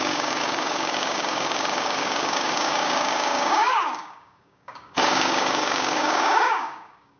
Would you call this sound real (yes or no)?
no